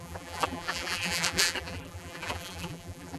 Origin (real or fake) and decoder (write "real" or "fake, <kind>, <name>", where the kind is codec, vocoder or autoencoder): fake, vocoder, BigVGAN v2